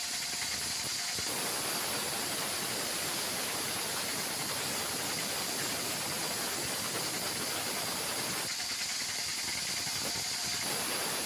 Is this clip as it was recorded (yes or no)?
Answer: yes